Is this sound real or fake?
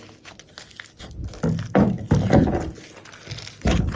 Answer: real